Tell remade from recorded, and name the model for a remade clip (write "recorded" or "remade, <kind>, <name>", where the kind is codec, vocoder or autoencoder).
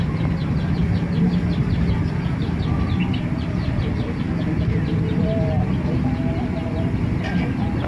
recorded